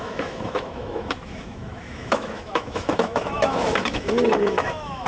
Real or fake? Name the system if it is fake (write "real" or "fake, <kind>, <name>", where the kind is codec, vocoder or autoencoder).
fake, autoencoder, DAC-VAE